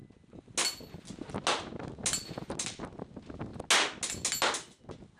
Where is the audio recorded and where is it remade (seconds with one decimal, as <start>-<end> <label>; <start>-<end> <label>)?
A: 0.0-5.2 recorded